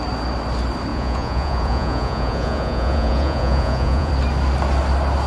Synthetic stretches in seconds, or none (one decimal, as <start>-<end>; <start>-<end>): 0.9-4.1